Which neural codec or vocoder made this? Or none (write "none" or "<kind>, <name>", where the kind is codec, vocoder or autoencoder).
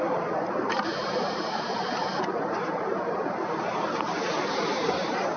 vocoder, BigVGAN v2